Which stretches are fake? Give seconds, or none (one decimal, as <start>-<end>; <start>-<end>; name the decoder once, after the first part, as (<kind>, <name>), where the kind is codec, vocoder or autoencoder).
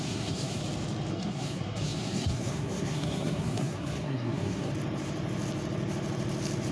0.0-0.6 (codec, SNAC); 1.1-4.7